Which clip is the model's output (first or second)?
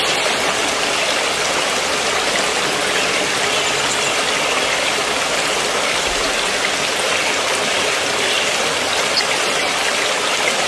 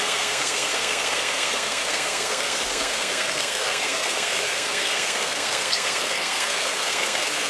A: second